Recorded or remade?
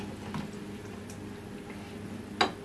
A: recorded